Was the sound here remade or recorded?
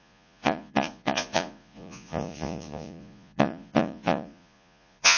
remade